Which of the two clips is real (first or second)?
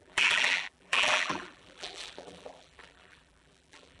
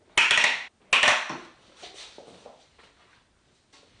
second